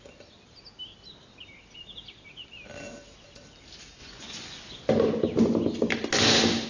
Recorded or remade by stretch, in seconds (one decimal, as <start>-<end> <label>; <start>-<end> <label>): 0.0-4.0 recorded; 4.0-4.9 remade; 4.9-6.7 recorded